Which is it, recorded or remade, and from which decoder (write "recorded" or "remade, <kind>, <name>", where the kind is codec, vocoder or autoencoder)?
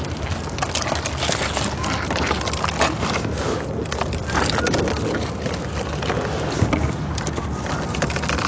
recorded